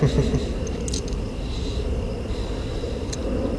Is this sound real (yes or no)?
yes